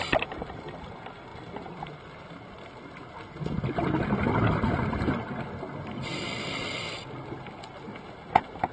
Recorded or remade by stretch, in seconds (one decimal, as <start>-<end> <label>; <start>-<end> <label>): 0.0-8.7 recorded